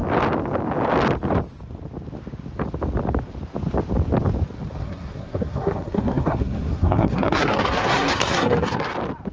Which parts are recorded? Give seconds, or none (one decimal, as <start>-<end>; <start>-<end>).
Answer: 0.0-4.8; 8.9-9.3